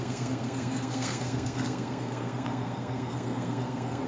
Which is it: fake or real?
fake